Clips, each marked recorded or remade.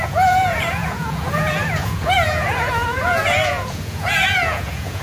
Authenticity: remade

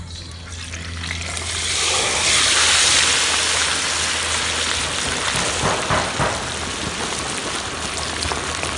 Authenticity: recorded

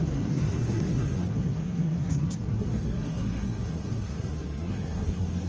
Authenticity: remade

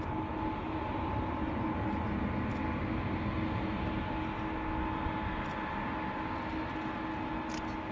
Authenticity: recorded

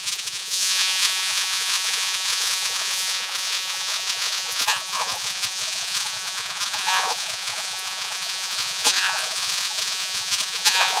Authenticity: remade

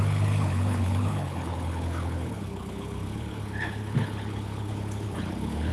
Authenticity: remade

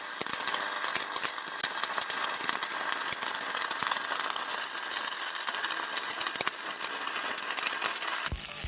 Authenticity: recorded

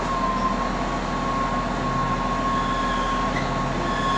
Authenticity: recorded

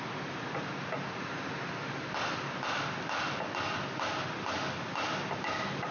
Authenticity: recorded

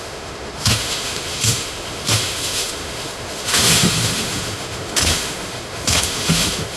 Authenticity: remade